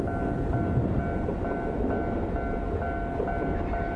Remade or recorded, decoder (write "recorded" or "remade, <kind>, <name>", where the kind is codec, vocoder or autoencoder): recorded